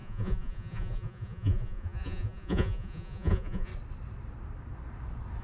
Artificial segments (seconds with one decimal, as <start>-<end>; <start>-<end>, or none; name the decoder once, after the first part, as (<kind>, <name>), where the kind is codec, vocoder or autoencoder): 0.0-3.7 (vocoder, Vocos)